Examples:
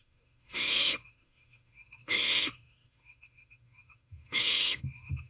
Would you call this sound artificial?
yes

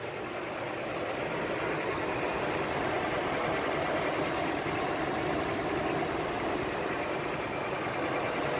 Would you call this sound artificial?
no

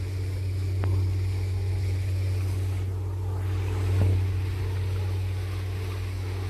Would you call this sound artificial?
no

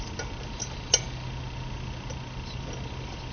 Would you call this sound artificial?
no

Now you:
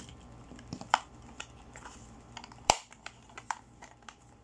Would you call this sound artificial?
yes